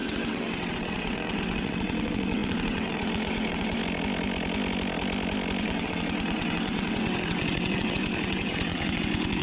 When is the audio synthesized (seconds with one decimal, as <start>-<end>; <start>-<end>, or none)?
0.0-3.8; 5.6-9.4